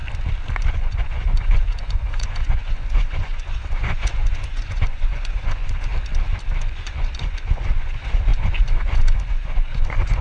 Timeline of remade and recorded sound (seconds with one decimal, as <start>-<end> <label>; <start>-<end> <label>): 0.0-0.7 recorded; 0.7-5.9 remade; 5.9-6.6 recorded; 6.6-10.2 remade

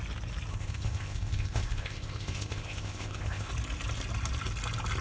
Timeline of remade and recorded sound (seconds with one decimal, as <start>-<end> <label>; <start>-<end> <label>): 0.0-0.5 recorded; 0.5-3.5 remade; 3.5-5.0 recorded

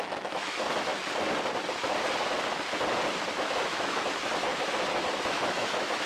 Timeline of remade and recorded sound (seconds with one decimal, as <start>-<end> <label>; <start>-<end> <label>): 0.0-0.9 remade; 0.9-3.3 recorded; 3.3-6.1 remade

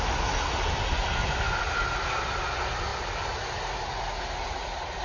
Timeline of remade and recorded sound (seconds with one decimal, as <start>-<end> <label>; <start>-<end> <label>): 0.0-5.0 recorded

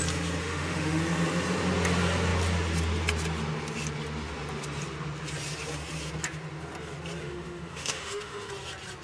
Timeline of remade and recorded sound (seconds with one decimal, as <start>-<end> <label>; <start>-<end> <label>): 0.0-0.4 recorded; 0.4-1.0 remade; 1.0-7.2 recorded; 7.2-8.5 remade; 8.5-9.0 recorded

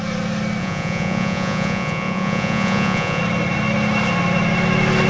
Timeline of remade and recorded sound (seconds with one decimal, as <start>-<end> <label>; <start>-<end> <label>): 0.0-0.6 recorded; 0.6-3.2 remade; 3.2-5.1 recorded